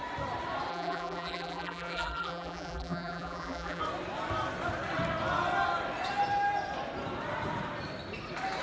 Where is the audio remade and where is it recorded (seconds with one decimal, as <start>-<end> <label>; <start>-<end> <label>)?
0.0-0.7 recorded; 0.7-3.8 remade; 3.8-8.6 recorded